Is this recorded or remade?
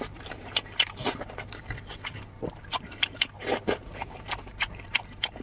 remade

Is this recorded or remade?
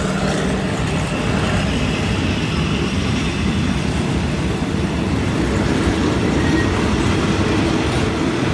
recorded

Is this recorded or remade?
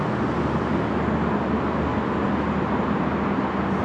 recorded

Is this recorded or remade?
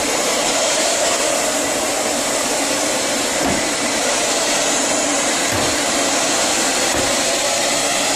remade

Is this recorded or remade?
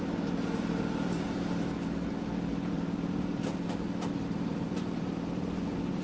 remade